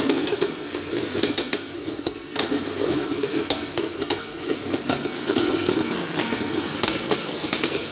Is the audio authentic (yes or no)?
no